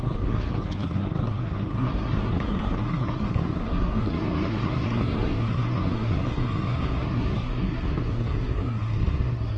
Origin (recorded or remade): remade